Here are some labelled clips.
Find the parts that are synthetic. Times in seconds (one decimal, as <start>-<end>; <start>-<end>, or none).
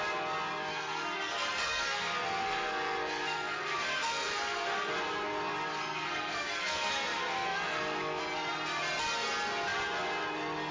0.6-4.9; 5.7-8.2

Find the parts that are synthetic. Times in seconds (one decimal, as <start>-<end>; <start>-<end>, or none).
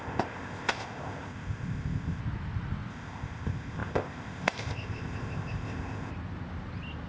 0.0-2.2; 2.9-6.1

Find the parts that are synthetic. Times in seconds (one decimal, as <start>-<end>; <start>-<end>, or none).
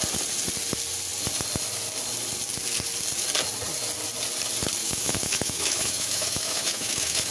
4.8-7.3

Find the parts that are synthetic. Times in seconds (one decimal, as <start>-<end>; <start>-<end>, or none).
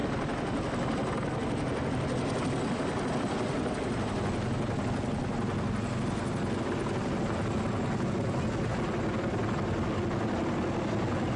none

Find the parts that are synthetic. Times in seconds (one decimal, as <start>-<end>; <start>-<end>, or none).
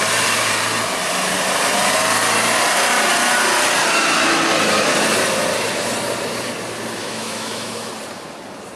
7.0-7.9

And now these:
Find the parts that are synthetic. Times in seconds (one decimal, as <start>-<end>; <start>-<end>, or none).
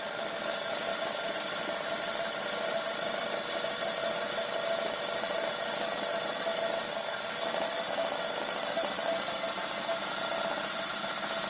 0.9-3.2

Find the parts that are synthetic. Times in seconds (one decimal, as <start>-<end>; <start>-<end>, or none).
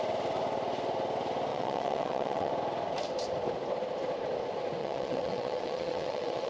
1.5-2.5; 4.8-6.5